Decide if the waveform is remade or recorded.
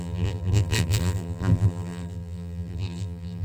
remade